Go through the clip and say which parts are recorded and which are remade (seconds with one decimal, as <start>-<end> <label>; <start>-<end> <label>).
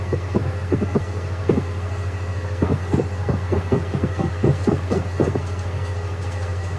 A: 0.0-6.8 remade